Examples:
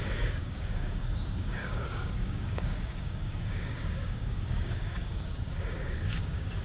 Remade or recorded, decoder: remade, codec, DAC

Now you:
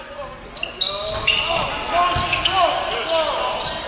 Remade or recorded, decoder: recorded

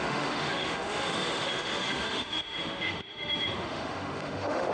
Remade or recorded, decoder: remade, autoencoder, DAC-VAE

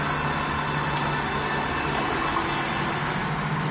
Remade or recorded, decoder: recorded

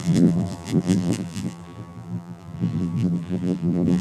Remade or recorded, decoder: remade, vocoder, BigVGAN v2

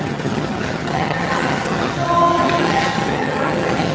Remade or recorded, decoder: remade, vocoder, HiFi-GAN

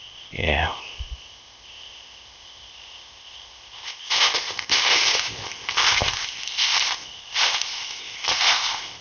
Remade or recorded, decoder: remade, codec, ZipCodec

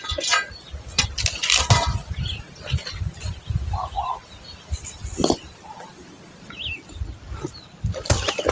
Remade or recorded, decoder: recorded